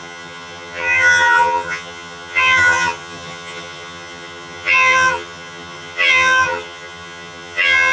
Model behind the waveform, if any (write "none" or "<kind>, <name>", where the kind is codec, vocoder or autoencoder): vocoder, HiFi-GAN